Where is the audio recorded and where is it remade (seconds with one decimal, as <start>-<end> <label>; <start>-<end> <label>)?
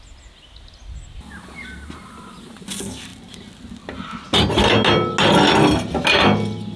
0.0-6.8 recorded